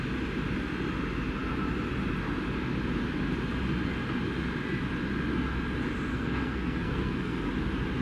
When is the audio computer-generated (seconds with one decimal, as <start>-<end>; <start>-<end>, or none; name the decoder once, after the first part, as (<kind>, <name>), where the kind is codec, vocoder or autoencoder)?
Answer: 6.1-7.5 (codec, SNAC)